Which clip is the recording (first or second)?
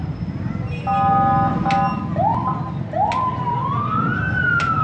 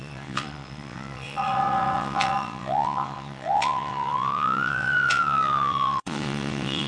first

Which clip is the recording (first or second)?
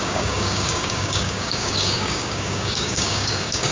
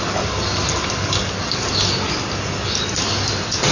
second